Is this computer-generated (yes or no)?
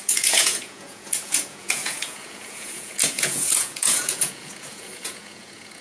yes